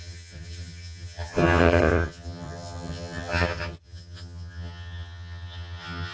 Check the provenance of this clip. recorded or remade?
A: remade